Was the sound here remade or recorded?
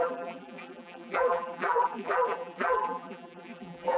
remade